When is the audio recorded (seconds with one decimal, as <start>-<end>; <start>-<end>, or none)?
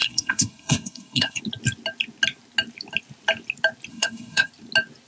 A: 1.4-3.9; 4.5-5.1